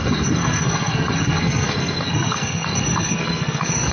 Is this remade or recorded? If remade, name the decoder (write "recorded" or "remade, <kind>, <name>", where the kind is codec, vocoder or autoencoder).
remade, codec, SNAC